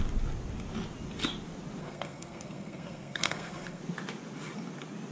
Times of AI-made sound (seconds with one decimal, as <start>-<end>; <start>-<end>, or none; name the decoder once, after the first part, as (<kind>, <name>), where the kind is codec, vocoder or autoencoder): 1.8-3.8 (codec, SNAC)